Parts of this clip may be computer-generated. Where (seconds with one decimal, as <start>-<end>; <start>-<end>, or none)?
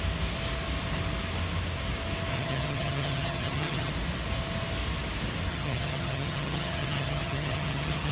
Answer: 2.3-3.9; 5.5-8.1